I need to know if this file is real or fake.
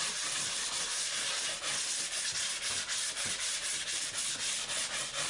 real